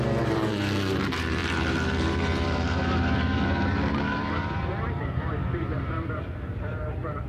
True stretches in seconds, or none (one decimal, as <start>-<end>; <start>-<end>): none